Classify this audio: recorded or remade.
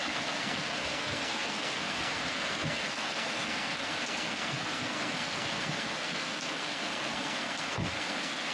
remade